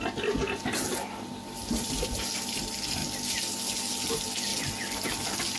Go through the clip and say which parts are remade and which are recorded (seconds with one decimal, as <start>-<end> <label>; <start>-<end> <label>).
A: 0.0-5.6 recorded